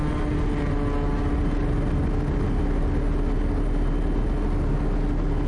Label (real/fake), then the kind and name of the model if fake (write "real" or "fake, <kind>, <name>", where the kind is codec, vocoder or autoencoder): real